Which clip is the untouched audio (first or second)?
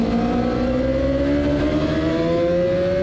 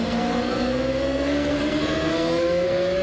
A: first